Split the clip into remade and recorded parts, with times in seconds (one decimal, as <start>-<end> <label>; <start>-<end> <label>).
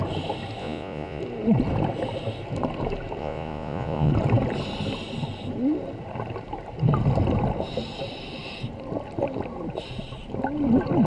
0.0-0.6 recorded; 0.6-1.2 remade; 1.2-3.2 recorded; 3.2-4.1 remade; 4.1-11.1 recorded